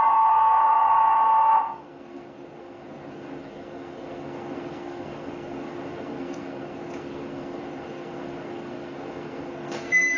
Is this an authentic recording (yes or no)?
no